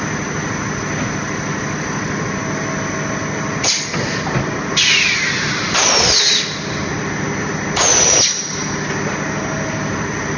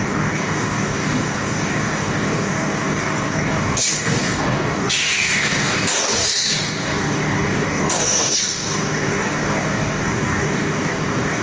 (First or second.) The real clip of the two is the first